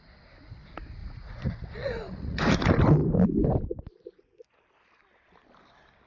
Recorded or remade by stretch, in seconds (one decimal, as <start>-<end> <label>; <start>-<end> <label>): 0.0-1.0 recorded; 1.0-2.4 remade; 2.4-6.1 recorded